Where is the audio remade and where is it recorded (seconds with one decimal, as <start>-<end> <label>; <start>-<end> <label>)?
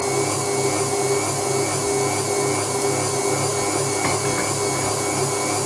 0.0-5.7 recorded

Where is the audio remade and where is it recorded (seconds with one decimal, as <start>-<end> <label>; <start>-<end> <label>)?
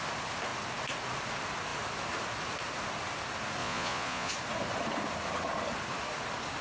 0.0-3.6 recorded; 3.6-4.3 remade; 4.3-6.6 recorded